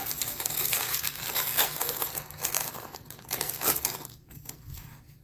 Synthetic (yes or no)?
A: yes